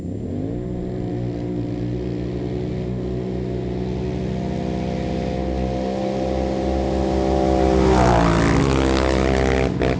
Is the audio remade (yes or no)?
no